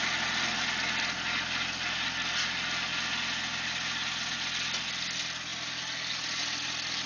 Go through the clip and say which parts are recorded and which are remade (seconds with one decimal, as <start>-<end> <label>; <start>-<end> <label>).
0.0-7.1 recorded